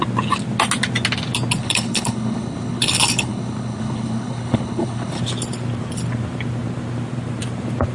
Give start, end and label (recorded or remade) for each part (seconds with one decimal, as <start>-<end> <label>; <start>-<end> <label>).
0.0-1.6 recorded; 1.6-5.2 remade; 5.2-7.9 recorded